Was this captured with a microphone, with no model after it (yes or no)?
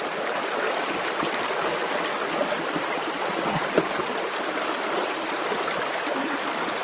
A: yes